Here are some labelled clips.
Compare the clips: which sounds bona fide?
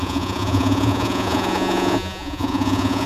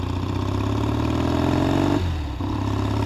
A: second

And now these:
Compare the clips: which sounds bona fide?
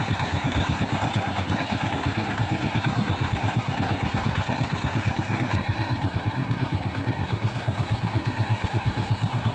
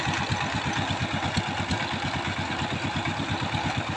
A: second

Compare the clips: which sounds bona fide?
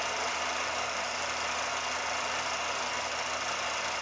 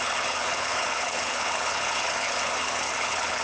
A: first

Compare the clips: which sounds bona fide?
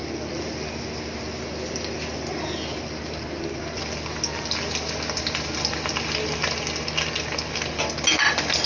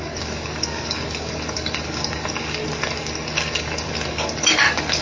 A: first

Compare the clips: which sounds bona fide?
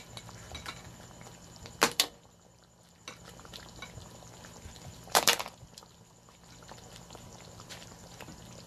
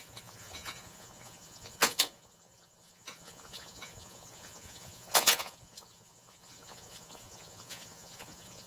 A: first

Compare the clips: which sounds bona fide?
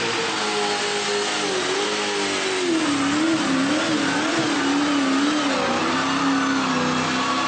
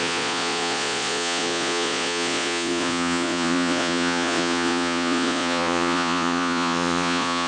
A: first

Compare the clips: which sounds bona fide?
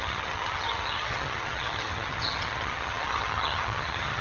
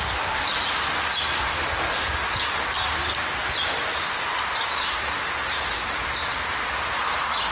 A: second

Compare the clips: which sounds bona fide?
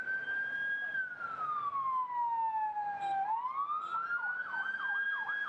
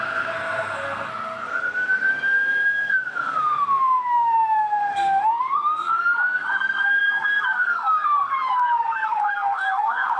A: first